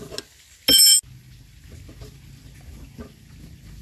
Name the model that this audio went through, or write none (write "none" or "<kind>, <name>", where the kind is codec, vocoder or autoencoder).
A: none